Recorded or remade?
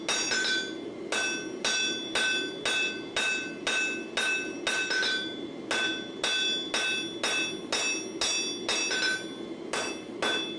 recorded